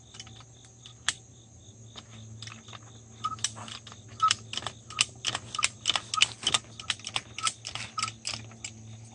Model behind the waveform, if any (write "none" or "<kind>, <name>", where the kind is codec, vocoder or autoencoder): none